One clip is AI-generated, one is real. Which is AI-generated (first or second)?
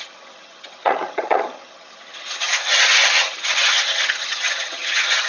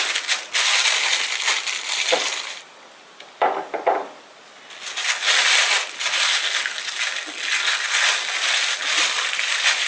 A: first